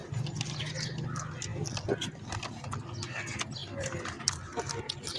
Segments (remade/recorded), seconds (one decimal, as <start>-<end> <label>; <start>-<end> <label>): 0.0-0.6 remade; 0.6-3.6 recorded; 3.6-4.8 remade; 4.8-5.2 recorded

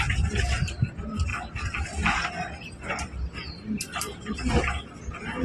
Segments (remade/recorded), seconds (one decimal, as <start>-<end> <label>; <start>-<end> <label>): 0.0-5.4 recorded

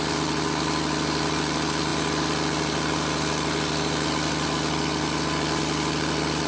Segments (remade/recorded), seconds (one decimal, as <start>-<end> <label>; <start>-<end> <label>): 0.0-6.5 recorded

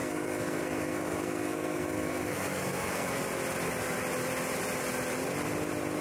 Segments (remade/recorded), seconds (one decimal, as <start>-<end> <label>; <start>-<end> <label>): 0.0-3.2 remade; 3.2-6.0 recorded

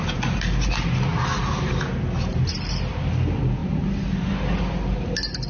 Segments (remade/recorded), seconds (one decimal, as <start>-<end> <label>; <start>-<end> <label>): 0.0-5.5 recorded

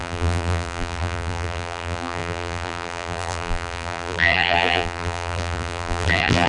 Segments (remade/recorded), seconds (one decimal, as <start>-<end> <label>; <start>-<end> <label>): 0.0-6.5 remade

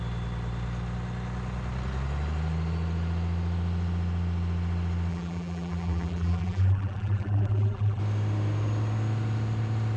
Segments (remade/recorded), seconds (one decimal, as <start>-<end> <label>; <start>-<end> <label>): 0.0-5.1 recorded; 5.1-8.0 remade; 8.0-10.0 recorded

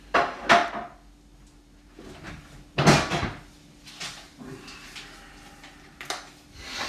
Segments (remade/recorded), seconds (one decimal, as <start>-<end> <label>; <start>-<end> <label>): 0.0-6.9 recorded